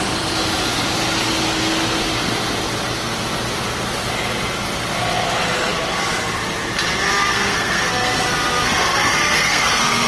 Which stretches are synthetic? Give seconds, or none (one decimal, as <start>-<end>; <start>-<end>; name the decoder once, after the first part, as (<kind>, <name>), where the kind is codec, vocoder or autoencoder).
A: 7.2-10.1 (codec, SNAC)